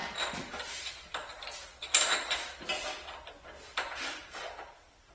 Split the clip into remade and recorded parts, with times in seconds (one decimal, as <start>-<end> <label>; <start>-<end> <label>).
0.0-5.1 recorded